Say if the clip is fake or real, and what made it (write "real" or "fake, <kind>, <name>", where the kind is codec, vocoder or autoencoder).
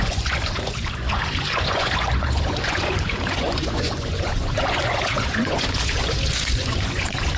fake, vocoder, Vocos